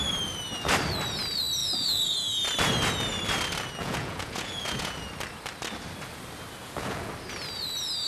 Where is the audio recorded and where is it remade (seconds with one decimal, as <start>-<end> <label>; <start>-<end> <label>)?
0.0-1.6 recorded; 1.6-2.3 remade; 2.3-3.8 recorded; 3.8-5.1 remade; 5.1-6.6 recorded; 6.6-7.1 remade; 7.1-8.1 recorded